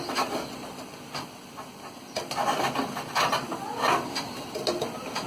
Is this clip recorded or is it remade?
recorded